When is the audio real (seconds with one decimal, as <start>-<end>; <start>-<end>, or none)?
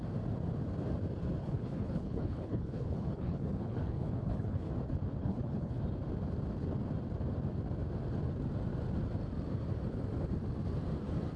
0.0-1.4; 4.7-5.2; 5.8-11.4